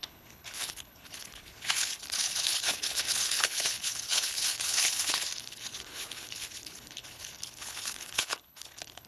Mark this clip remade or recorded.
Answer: remade